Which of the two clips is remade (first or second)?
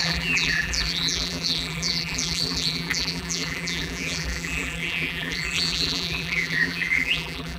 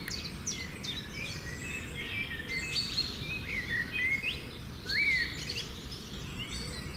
first